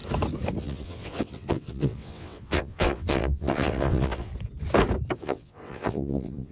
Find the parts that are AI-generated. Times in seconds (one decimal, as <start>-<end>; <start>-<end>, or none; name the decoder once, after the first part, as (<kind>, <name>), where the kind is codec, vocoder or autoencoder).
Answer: 0.6-4.3 (vocoder, WaveNeXt); 5.2-6.5